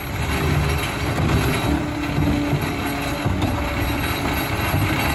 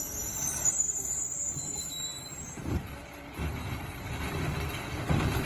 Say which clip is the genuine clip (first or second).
first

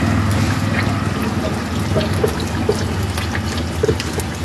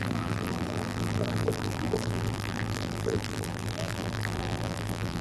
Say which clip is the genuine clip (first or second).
first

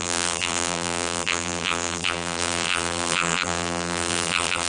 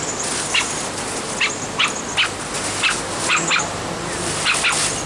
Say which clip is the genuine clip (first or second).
second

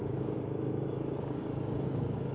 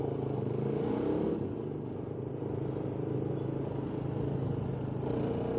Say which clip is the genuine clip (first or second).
second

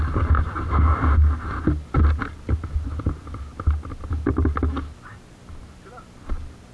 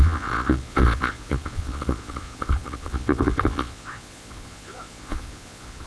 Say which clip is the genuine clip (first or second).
first